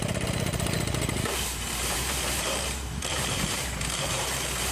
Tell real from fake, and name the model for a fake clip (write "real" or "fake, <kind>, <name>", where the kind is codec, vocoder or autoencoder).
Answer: fake, vocoder, BigVGAN v2